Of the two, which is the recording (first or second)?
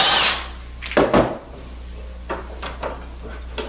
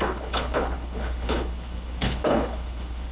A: first